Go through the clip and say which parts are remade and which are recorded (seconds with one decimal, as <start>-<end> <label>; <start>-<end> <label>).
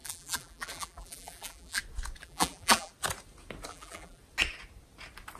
0.0-1.8 remade; 1.8-2.2 recorded; 2.2-2.9 remade; 2.9-3.7 recorded; 3.7-4.2 remade; 4.2-5.4 recorded